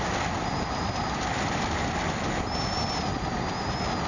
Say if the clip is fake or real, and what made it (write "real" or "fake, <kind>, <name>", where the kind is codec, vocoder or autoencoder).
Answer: real